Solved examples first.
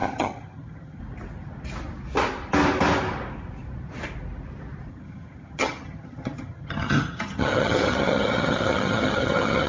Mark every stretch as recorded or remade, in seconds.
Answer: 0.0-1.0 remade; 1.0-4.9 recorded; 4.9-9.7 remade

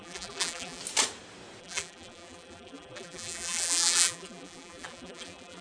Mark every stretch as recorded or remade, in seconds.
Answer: 0.0-0.8 remade; 0.8-1.6 recorded; 1.6-5.6 remade

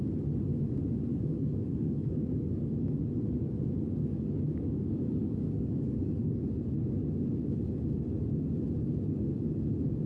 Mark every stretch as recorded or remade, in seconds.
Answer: 0.0-1.1 recorded; 1.1-2.9 remade; 2.9-4.1 recorded; 4.1-6.4 remade; 6.4-10.1 recorded

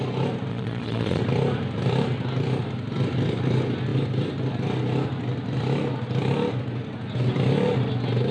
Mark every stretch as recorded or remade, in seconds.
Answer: 0.0-0.5 recorded; 0.5-1.2 remade; 1.2-8.3 recorded

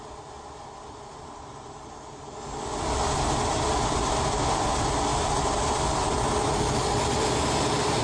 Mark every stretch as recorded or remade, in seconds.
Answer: 0.0-8.0 recorded

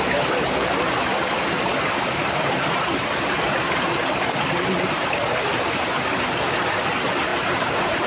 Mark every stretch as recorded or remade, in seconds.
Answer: 0.0-8.1 remade

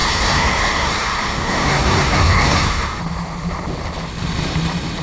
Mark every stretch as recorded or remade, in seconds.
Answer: 0.0-3.0 remade; 3.0-5.0 recorded

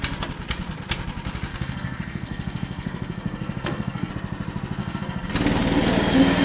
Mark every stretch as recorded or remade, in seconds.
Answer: 0.0-1.5 recorded; 1.5-4.1 remade; 4.1-4.8 recorded; 4.8-5.3 remade; 5.3-6.4 recorded